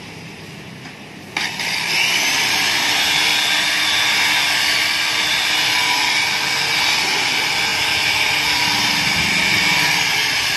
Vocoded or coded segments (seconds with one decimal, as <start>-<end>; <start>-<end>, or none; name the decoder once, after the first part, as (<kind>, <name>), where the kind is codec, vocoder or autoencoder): 0.0-3.3 (vocoder, BigVGAN v2); 4.5-7.7; 9.2-10.6